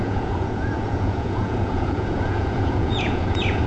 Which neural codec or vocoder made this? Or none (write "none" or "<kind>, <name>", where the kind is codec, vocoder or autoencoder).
vocoder, Vocos